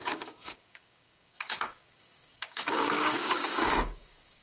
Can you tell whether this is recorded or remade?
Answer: remade